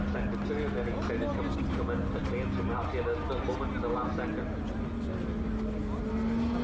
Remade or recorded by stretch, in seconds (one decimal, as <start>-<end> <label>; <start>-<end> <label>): 0.0-6.6 recorded